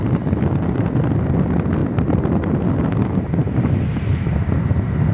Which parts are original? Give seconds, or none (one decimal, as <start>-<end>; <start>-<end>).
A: 0.0-5.1